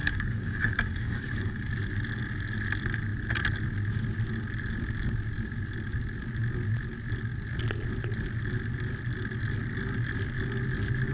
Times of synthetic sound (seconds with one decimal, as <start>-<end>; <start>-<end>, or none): 0.0-1.7